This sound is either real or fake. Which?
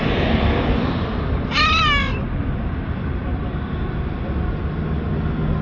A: real